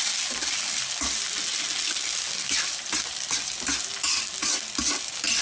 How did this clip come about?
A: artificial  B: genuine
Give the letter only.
B